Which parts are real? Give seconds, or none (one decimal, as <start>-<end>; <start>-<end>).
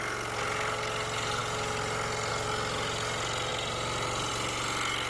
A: 0.0-5.1